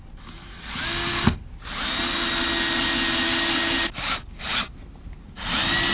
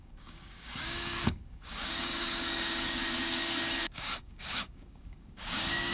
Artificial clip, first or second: second